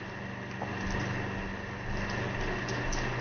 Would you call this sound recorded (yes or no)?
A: yes